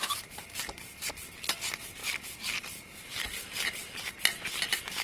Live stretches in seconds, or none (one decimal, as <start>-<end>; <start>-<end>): 1.1-2.0; 4.1-5.0